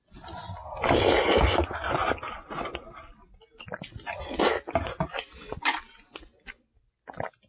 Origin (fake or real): real